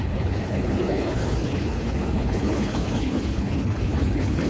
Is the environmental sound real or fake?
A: fake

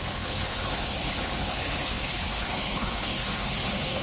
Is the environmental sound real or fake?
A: fake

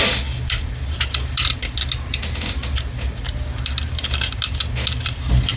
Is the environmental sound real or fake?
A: real